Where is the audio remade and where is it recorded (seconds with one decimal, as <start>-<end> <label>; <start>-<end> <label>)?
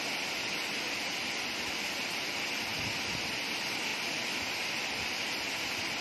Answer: 0.0-6.0 recorded